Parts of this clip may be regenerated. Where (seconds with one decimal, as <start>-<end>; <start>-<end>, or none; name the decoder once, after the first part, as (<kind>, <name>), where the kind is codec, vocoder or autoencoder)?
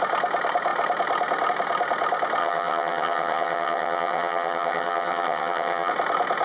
2.4-5.9 (vocoder, HiFi-GAN)